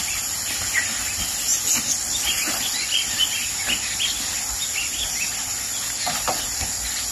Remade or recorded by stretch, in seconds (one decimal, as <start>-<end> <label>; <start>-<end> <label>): 0.0-7.1 recorded